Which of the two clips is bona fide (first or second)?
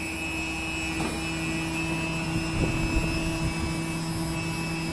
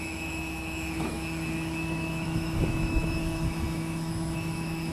first